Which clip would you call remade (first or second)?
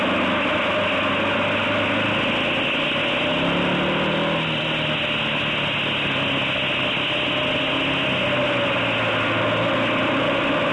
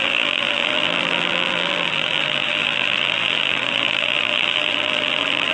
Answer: second